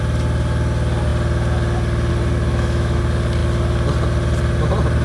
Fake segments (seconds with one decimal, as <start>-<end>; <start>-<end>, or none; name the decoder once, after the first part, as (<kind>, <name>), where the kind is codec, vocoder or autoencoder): 2.5-3.0 (autoencoder, DAC-VAE)